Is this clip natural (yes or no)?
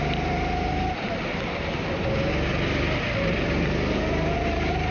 yes